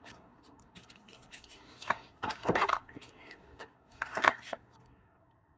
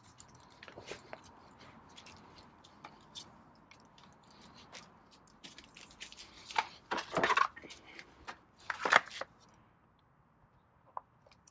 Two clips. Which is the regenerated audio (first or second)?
first